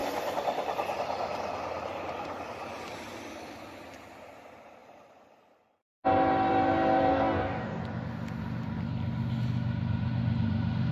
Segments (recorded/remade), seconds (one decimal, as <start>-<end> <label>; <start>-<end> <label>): 0.0-7.1 recorded; 7.1-7.8 remade; 7.8-10.9 recorded